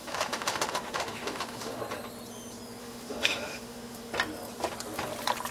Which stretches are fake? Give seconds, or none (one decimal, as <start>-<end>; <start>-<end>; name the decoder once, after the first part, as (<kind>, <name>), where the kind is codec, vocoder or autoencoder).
0.0-1.8 (autoencoder, DAC-VAE); 2.8-4.1